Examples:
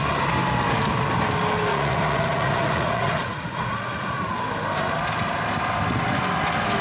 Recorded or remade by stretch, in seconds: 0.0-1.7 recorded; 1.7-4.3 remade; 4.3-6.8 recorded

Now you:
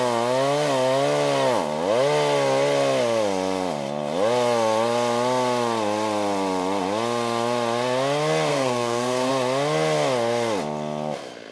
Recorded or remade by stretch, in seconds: 0.0-8.5 recorded; 8.5-9.3 remade; 9.3-11.5 recorded

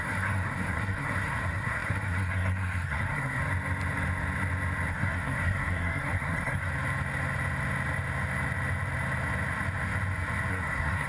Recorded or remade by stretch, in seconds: 0.0-3.4 remade; 3.4-4.9 recorded; 4.9-6.7 remade; 6.7-10.5 recorded; 10.5-11.1 remade

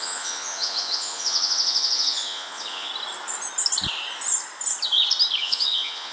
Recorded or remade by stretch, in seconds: 0.0-2.9 remade; 2.9-5.4 recorded; 5.4-6.1 remade

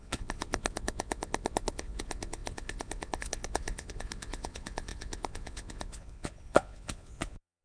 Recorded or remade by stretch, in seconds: 0.0-7.6 remade